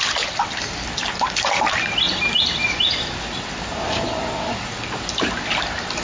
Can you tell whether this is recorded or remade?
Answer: recorded